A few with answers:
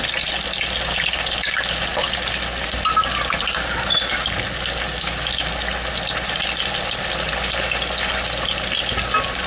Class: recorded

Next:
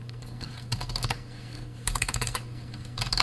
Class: remade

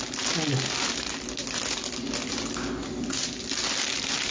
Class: recorded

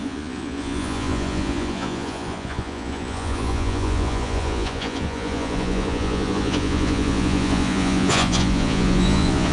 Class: remade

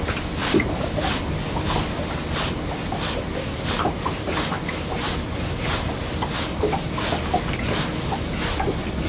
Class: recorded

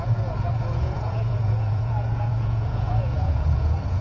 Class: remade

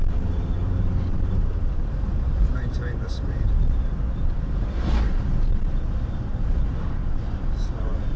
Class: remade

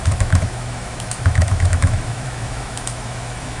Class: remade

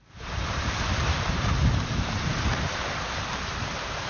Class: remade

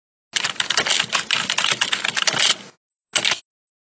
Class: recorded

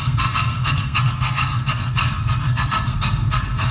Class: remade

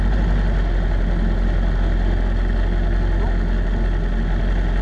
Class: recorded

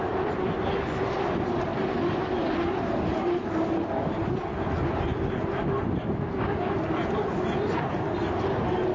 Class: recorded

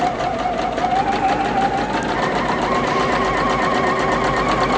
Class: recorded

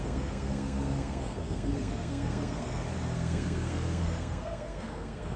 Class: remade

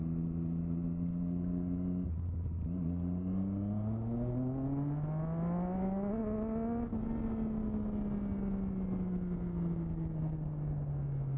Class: recorded